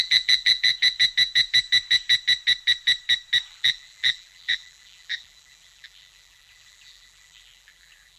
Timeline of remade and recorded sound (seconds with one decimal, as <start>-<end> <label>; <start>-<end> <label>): 0.0-0.7 remade; 0.7-3.5 recorded; 3.5-8.2 remade